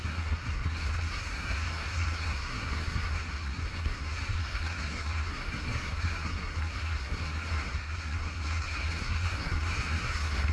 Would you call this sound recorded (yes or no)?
no